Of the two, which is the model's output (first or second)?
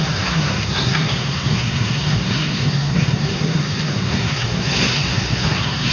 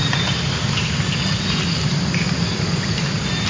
first